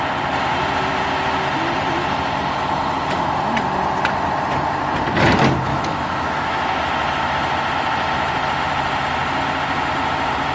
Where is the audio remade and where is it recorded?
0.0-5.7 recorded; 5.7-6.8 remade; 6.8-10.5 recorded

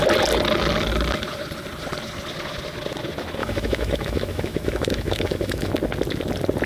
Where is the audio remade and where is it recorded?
0.0-3.4 recorded; 3.4-5.7 remade; 5.7-6.7 recorded

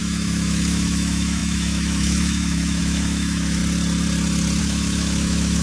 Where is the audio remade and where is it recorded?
0.0-3.6 remade; 3.6-4.6 recorded; 4.6-5.6 remade

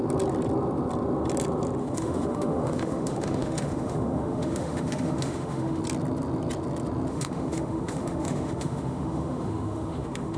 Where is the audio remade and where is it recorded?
0.0-1.8 recorded; 1.8-5.8 remade; 5.8-7.1 recorded; 7.1-10.4 remade

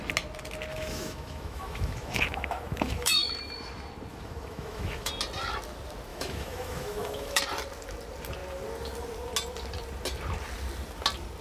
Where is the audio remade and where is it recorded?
0.0-0.7 recorded; 0.7-3.3 remade; 3.3-4.1 recorded; 4.1-5.1 remade; 5.1-6.1 recorded; 6.1-7.4 remade; 7.4-11.4 recorded

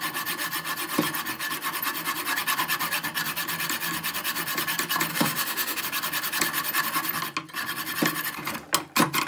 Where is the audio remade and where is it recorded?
0.0-5.1 recorded; 5.1-5.8 remade; 5.8-9.3 recorded